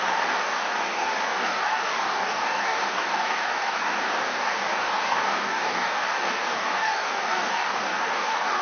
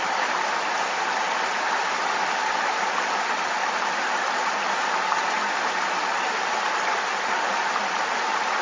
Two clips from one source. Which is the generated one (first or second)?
first